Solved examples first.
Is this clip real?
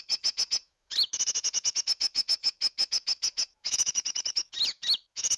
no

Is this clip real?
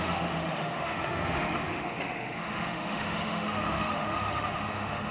no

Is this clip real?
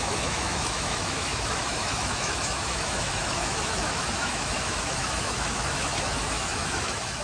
no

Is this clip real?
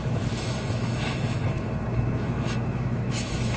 no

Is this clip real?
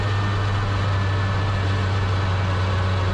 yes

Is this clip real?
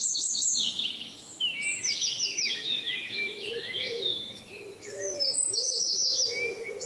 no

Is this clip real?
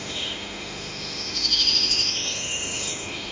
no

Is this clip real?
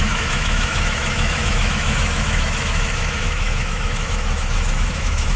no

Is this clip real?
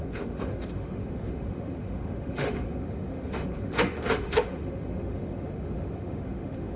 no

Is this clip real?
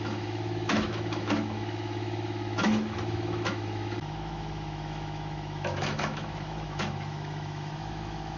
no